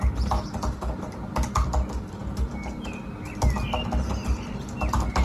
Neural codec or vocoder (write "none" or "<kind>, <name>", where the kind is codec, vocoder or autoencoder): none